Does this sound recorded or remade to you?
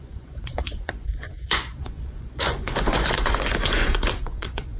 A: remade